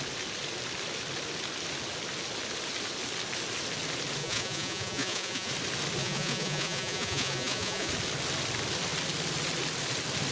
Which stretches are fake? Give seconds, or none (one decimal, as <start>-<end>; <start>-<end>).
4.2-5.5; 6.0-7.9